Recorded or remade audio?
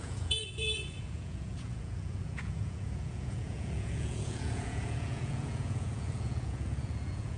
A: remade